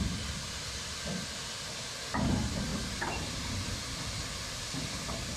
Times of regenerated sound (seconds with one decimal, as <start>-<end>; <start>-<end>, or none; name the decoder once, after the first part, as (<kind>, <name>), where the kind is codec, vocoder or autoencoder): 0.4-1.4 (vocoder, BigVGAN v2)